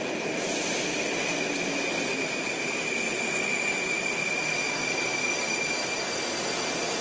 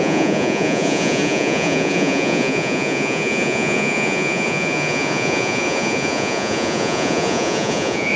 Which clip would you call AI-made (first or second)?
second